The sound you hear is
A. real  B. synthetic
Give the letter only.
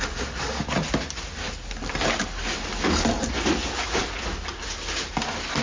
A